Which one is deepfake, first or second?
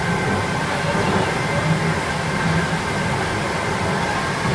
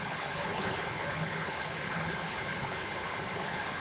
second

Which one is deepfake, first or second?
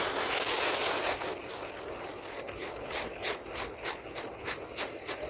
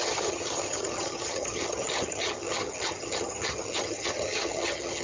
second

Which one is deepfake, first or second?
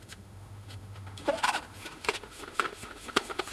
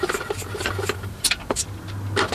first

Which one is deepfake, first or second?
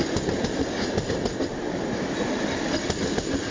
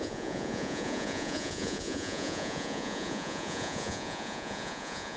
second